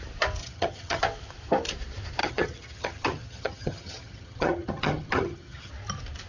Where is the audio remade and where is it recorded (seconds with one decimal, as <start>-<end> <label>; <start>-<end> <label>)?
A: 0.0-0.4 recorded; 0.4-1.0 remade; 1.0-2.2 recorded; 2.2-5.7 remade; 5.7-6.3 recorded

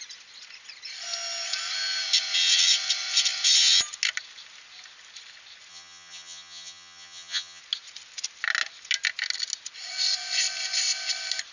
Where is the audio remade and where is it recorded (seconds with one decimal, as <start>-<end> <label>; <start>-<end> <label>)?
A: 0.0-5.7 recorded; 5.7-7.6 remade; 7.6-11.5 recorded

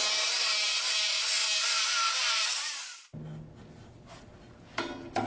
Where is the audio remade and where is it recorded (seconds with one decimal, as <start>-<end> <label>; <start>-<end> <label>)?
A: 0.0-5.3 recorded

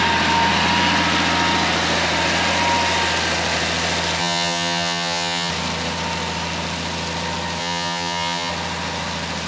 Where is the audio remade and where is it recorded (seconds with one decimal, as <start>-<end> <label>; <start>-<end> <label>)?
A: 0.0-4.2 recorded; 4.2-5.5 remade; 5.5-7.6 recorded; 7.6-8.5 remade; 8.5-9.5 recorded